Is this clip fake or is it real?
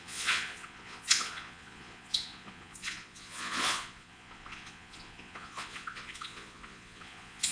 fake